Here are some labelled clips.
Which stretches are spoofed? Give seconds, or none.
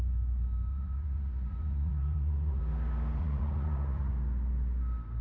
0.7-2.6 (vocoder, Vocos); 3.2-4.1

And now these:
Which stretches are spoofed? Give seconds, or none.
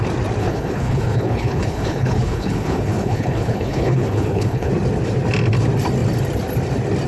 0.4-4.7 (codec, HILCodec)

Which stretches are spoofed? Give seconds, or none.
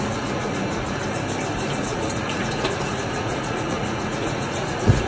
0.0-1.0 (vocoder, Vocos); 1.7-5.1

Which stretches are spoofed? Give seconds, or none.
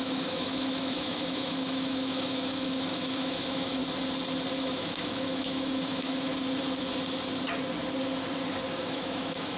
0.0-3.8 (autoencoder, DAC-VAE); 4.6-6.3; 8.8-9.6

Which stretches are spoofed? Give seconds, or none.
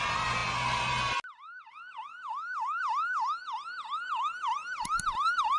none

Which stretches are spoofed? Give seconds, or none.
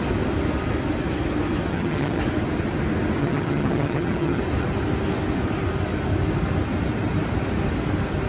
1.7-2.2 (vocoder, HiFi-GAN); 3.2-4.4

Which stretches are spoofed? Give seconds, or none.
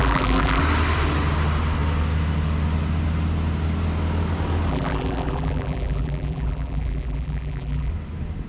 0.0-0.6 (vocoder, BigVGAN v2); 4.7-7.9